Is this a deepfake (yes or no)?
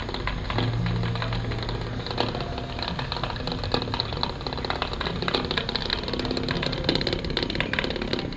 no